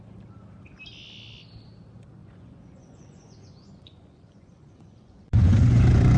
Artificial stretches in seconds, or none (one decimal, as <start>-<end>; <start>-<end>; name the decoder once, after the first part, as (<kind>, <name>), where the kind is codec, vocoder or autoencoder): 2.2-6.2 (vocoder, Vocos)